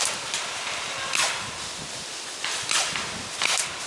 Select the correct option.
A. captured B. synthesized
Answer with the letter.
A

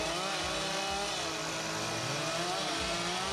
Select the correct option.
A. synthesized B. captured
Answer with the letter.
B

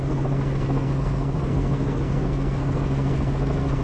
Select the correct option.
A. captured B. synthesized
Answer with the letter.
B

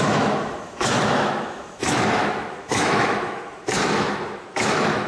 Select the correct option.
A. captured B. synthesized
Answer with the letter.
B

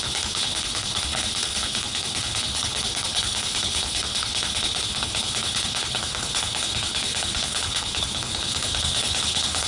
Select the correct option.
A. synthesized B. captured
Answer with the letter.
A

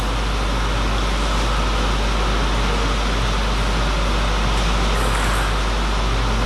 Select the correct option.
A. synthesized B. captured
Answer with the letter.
B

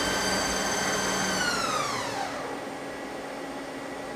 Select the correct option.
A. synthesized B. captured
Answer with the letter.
B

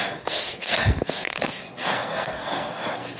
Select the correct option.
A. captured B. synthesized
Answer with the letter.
B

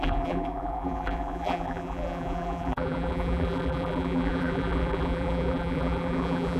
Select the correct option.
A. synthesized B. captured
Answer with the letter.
A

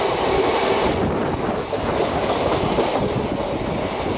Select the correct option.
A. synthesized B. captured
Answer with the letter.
B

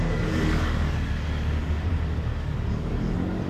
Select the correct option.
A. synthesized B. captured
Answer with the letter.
A